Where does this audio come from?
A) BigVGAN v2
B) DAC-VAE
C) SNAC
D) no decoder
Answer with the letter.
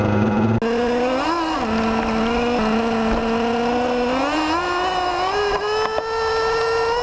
D